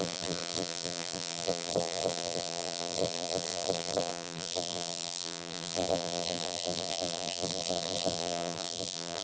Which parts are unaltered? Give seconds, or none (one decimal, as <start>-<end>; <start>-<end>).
none